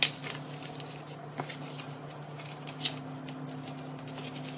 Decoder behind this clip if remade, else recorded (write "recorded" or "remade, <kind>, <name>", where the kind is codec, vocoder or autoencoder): recorded